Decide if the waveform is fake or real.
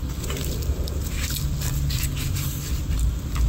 fake